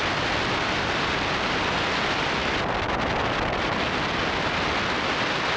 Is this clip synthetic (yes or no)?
no